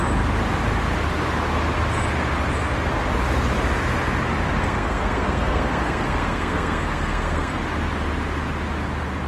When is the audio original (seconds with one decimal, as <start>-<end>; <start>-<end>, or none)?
0.0-4.6; 7.6-9.3